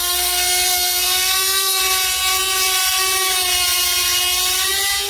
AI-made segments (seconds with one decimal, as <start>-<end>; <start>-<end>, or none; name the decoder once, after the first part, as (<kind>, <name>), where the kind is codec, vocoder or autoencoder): 0.0-1.8 (codec, SNAC)